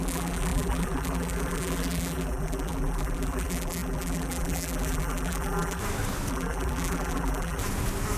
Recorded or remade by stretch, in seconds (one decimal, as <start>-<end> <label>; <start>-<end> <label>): 0.0-5.8 remade; 5.8-6.3 recorded; 6.3-7.6 remade; 7.6-8.2 recorded